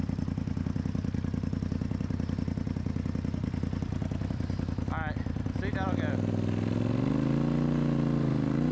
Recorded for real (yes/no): yes